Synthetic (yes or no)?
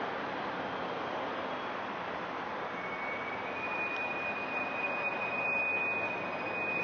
no